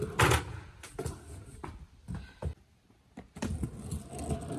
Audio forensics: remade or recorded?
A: recorded